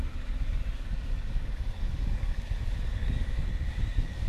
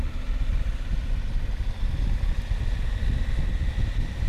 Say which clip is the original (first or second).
second